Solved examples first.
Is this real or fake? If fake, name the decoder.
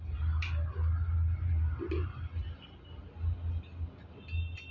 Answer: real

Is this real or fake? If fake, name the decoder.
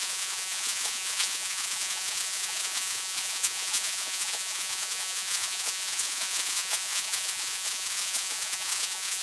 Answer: fake, vocoder, Vocos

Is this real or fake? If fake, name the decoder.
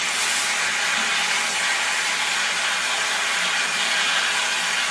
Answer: real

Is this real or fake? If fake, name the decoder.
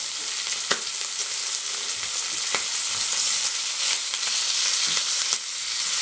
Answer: real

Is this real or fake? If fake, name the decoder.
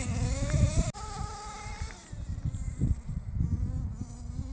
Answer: real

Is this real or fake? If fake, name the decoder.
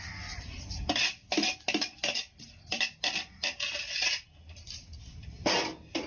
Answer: real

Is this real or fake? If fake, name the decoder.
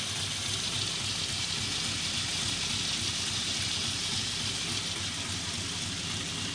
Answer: real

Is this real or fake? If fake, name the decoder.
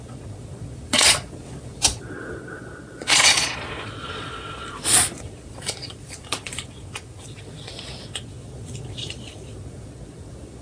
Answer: fake, vocoder, Vocos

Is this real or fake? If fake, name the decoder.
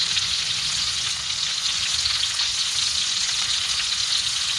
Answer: fake, vocoder, Vocos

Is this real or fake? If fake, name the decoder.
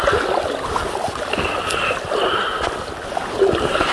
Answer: real